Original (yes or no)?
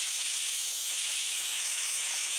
no